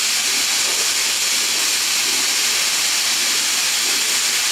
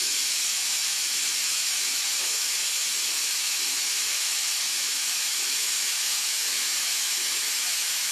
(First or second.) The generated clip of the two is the second